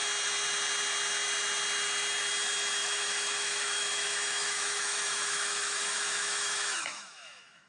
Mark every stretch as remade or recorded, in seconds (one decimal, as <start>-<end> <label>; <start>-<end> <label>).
0.0-2.8 recorded; 2.8-7.7 remade